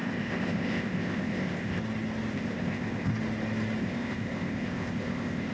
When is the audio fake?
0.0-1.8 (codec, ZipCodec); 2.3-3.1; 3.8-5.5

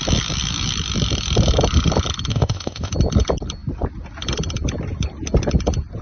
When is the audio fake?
2.3-2.9 (codec, ZipCodec)

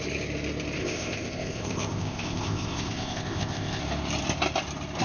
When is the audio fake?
0.8-3.8 (codec, ZipCodec)

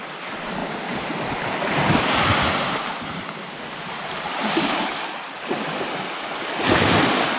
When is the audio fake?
none

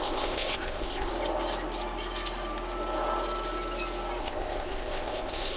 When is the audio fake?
0.0-1.1 (codec, ZipCodec); 4.2-5.6

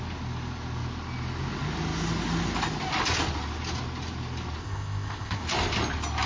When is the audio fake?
4.6-5.4 (codec, ZipCodec)

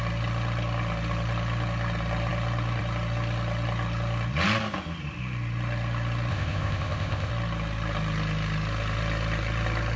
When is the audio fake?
6.3-7.3 (codec, ZipCodec)